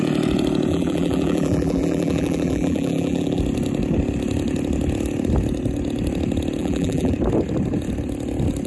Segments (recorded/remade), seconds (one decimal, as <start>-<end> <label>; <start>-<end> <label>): 0.0-0.7 recorded; 0.7-3.4 remade; 3.4-6.6 recorded; 6.6-7.1 remade; 7.1-8.7 recorded